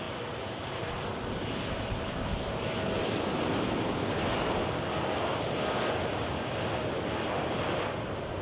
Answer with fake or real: real